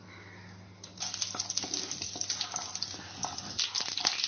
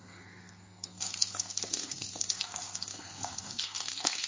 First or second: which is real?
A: first